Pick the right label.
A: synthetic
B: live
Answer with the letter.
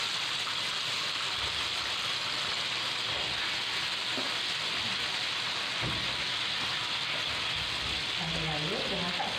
B